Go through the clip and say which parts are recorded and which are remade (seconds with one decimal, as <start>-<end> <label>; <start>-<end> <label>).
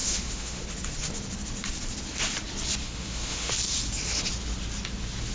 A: 0.0-0.6 remade; 0.6-2.8 recorded; 2.8-3.5 remade; 3.5-5.3 recorded